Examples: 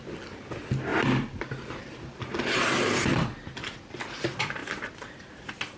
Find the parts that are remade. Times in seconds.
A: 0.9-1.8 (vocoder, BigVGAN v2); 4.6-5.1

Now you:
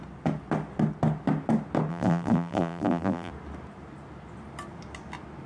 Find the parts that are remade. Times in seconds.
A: 1.9-3.3 (vocoder, BigVGAN v2)

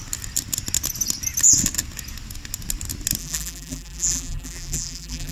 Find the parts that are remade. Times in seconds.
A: 3.2-5.3 (vocoder, BigVGAN v2)

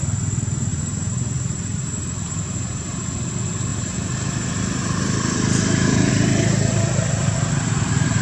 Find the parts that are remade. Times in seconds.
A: 0.7-3.1 (vocoder, BigVGAN v2); 3.7-6.1

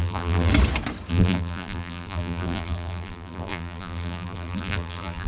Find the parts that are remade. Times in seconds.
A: 0.0-0.5 (vocoder, BigVGAN v2); 1.1-5.3

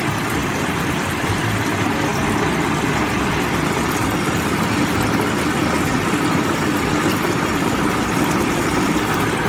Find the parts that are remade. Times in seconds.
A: 0.4-1.4 (vocoder, BigVGAN v2); 5.9-9.5

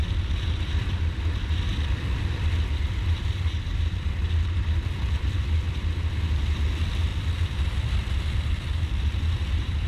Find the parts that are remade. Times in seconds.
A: 0.0-9.9 (vocoder, BigVGAN v2)